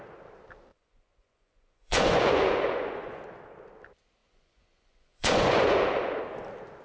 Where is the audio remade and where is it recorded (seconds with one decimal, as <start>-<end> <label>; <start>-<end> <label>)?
0.0-0.7 recorded; 0.7-3.2 remade; 3.2-4.2 recorded; 4.2-6.2 remade; 6.2-6.8 recorded

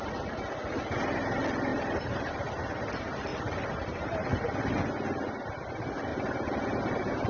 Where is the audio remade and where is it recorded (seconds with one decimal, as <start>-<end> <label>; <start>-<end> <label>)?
0.0-1.7 recorded; 1.7-2.3 remade; 2.3-3.3 recorded; 3.3-4.8 remade; 4.8-6.1 recorded; 6.1-6.8 remade; 6.8-7.3 recorded